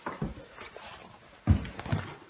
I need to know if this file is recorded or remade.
recorded